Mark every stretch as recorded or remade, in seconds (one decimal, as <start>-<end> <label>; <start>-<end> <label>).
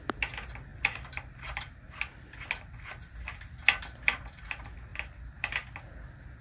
0.0-0.7 recorded; 0.7-1.8 remade; 1.8-6.4 recorded